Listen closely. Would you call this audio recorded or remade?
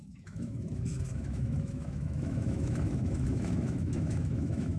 remade